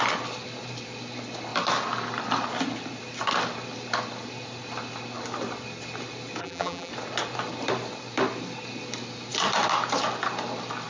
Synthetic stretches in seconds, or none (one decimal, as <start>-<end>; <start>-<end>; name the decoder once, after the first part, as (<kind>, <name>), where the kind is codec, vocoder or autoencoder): 6.4-6.9 (vocoder, BigVGAN v2)